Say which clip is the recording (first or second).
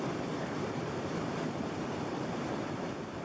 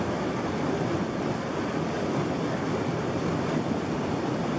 second